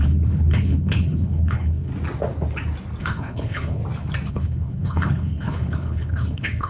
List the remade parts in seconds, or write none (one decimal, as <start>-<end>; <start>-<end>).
0.0-1.9; 3.0-3.8; 4.3-6.7